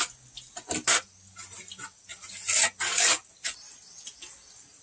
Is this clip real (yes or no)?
yes